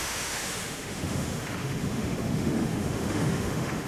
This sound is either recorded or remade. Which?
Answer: remade